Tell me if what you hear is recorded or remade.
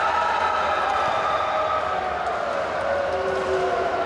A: recorded